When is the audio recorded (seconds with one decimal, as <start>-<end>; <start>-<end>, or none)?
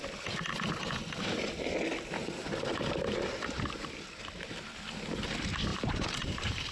0.0-2.2; 3.1-5.7